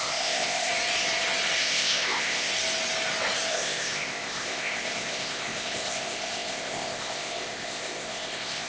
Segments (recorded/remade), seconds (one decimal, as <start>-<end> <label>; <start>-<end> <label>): 0.0-0.7 remade; 0.7-1.6 recorded; 1.6-2.5 remade; 2.5-3.5 recorded; 3.5-8.7 remade